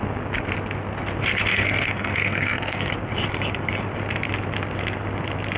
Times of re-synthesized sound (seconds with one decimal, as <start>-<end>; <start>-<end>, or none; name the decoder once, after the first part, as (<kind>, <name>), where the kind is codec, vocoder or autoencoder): 1.5-2.9 (codec, SNAC)